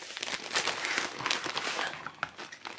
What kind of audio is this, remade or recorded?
recorded